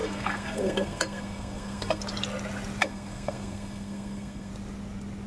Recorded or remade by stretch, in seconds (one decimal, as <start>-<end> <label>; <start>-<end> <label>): 0.0-2.0 remade; 2.0-2.8 recorded; 2.8-4.5 remade; 4.5-5.3 recorded